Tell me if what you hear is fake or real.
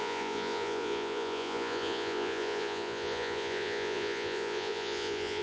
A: fake